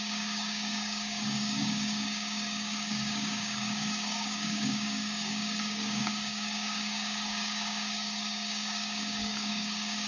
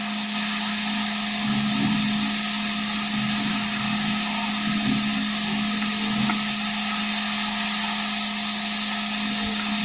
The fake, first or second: first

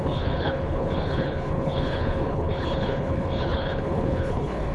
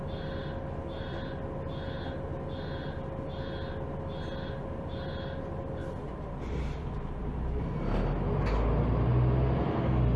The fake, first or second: first